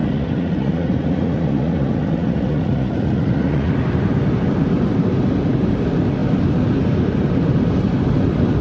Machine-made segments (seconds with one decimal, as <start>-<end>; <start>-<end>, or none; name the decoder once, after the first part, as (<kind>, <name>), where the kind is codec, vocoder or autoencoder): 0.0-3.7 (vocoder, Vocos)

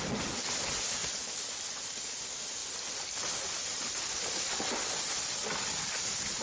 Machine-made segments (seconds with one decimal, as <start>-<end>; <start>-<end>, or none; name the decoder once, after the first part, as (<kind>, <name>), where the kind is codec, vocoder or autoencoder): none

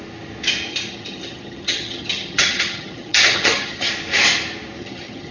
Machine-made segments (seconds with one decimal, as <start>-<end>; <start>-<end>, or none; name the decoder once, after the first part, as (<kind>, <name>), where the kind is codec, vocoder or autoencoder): 0.7-3.9 (vocoder, HiFi-GAN); 4.8-5.3